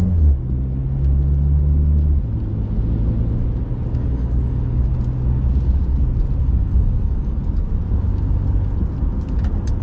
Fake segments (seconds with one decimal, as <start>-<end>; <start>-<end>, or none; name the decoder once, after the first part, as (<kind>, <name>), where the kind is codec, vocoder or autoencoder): 0.0-0.4 (codec, DAC); 4.0-4.9; 6.4-7.4